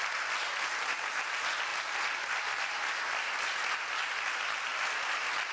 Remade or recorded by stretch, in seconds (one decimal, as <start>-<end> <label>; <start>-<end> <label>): 0.0-5.5 recorded